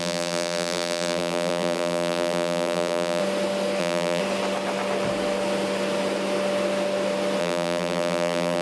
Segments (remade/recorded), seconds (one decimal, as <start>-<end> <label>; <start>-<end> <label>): 0.0-3.2 remade; 3.2-3.8 recorded; 3.8-4.2 remade; 4.2-7.4 recorded; 7.4-8.6 remade